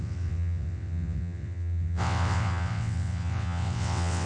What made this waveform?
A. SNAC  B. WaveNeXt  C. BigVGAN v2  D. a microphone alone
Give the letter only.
B